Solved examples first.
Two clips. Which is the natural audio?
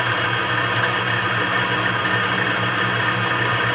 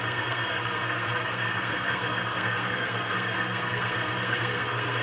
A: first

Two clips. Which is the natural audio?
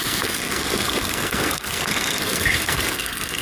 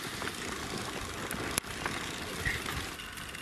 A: second